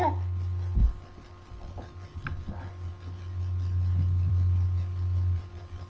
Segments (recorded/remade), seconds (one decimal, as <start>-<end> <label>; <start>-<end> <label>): 0.0-5.9 recorded

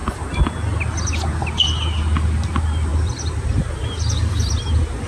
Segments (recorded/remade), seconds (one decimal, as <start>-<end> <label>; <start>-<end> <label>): 0.0-5.1 recorded

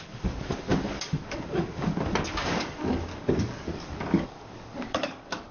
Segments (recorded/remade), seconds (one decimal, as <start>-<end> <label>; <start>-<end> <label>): 0.0-5.5 remade

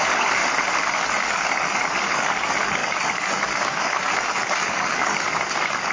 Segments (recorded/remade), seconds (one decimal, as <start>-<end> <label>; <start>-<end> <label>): 0.0-0.4 remade; 0.4-0.9 recorded; 0.9-5.9 remade

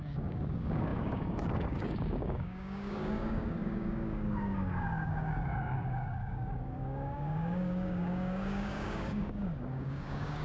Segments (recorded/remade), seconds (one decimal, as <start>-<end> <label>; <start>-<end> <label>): 0.0-10.4 remade

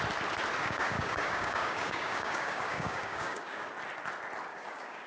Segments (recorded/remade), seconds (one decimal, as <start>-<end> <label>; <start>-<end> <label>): 0.0-0.6 recorded; 0.6-3.7 remade; 3.7-4.5 recorded; 4.5-5.1 remade